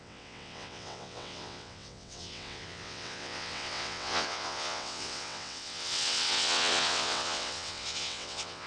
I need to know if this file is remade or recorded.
remade